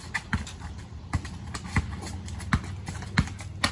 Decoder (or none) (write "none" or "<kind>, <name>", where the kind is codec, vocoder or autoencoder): none